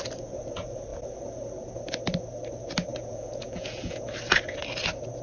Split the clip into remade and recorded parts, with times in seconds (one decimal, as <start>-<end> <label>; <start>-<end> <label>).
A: 0.0-2.9 recorded; 2.9-4.1 remade; 4.1-5.2 recorded